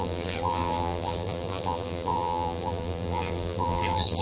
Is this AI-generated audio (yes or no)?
yes